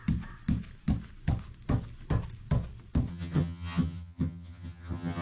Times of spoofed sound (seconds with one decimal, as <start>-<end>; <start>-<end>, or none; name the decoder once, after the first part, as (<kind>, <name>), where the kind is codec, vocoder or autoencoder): 3.1-5.2 (vocoder, HiFi-GAN)

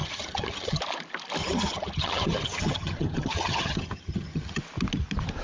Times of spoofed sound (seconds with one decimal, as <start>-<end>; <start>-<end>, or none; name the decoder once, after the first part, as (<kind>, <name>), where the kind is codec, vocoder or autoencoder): 0.0-0.8 (vocoder, HiFi-GAN); 1.4-4.6

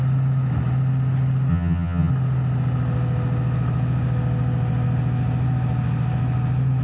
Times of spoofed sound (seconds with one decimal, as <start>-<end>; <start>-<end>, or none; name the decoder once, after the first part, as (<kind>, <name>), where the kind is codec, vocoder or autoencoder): 1.5-2.1 (vocoder, HiFi-GAN)

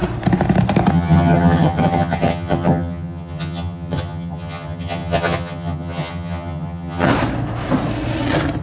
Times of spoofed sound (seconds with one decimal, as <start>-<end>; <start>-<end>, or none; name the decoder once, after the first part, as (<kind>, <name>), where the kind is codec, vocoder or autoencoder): 0.9-7.1 (vocoder, HiFi-GAN)

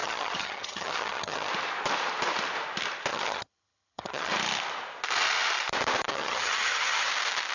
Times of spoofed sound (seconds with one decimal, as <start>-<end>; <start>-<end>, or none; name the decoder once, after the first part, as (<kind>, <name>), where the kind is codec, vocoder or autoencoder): 0.0-1.5 (vocoder, HiFi-GAN); 3.1-4.3; 6.1-7.1